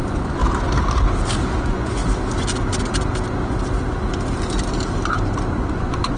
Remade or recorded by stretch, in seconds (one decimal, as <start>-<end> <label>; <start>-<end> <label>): 0.0-0.4 remade; 0.4-1.6 recorded; 1.6-2.0 remade; 2.0-5.7 recorded; 5.7-6.2 remade